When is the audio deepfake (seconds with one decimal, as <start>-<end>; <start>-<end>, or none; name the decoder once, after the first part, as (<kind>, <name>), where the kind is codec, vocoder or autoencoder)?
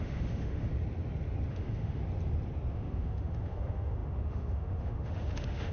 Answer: 0.0-0.7 (autoencoder, DAC-VAE); 1.5-2.0; 2.7-5.7